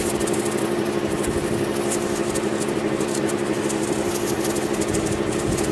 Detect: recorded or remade recorded